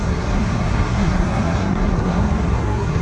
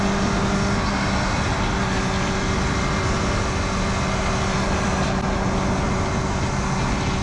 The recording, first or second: second